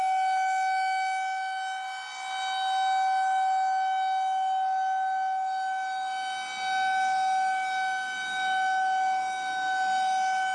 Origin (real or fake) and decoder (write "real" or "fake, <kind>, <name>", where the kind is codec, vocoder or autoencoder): real